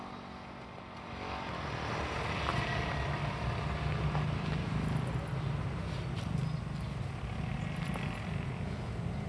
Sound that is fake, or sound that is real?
real